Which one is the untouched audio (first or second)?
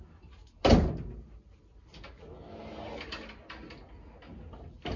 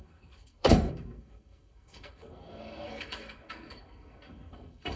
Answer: first